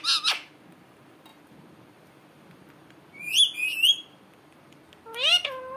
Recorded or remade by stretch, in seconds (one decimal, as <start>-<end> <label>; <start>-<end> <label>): 0.0-1.3 recorded; 1.3-4.8 remade; 4.8-5.8 recorded